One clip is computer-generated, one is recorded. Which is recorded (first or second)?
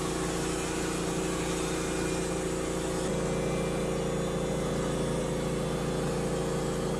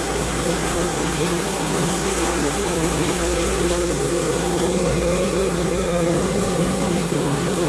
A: first